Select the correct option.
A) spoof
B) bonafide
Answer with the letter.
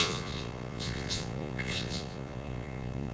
A